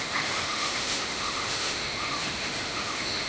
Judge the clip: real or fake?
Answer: fake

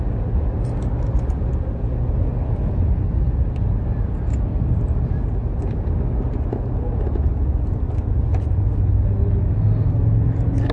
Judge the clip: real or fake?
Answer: real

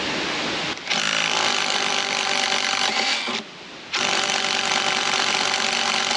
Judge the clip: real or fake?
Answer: real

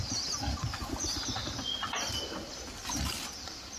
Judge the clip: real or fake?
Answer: real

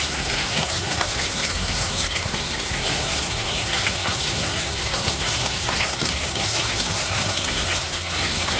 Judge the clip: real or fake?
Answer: fake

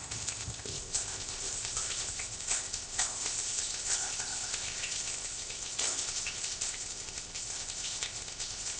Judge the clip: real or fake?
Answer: fake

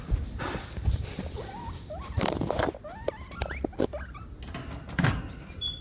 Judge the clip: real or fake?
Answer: real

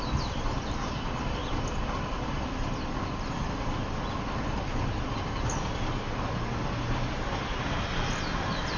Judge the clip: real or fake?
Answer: real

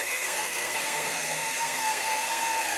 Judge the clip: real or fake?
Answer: fake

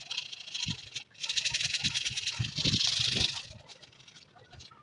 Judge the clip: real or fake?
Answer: real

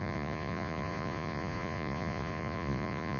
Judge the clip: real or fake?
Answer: fake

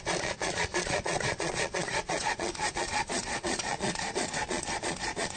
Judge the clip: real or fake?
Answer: fake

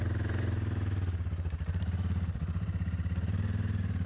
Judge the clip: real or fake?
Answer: fake